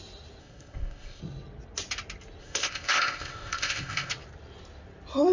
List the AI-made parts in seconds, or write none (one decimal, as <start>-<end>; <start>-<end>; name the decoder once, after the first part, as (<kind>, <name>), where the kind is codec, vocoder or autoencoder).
0.4-1.2 (codec, ZipCodec); 2.4-4.1